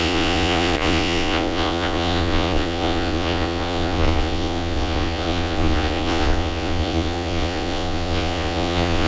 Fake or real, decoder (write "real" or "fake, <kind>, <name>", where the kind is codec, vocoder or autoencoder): fake, vocoder, Vocos